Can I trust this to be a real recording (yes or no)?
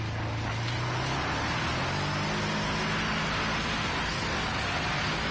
yes